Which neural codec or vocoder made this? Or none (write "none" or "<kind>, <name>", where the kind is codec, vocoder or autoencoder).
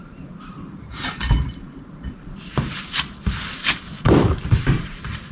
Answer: vocoder, BigVGAN v2